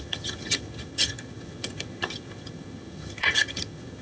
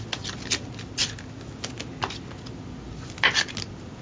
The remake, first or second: first